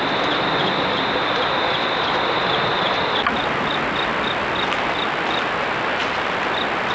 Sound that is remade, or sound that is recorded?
recorded